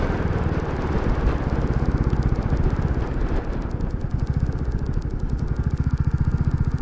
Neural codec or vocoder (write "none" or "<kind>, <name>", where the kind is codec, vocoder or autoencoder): none